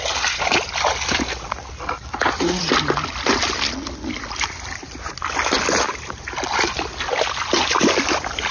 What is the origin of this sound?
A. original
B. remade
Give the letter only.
A